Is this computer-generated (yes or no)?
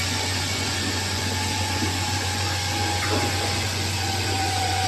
yes